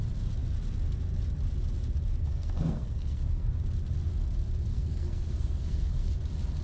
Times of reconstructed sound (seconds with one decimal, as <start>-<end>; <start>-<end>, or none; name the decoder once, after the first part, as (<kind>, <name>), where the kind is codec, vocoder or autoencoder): 2.2-3.5 (codec, SNAC); 4.7-6.1